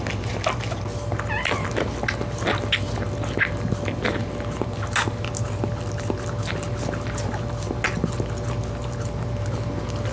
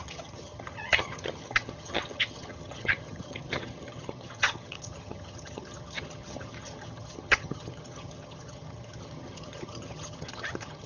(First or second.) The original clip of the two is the first